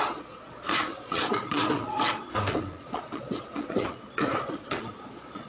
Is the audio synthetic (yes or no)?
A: yes